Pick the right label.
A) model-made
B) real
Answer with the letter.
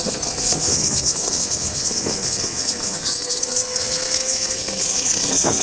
A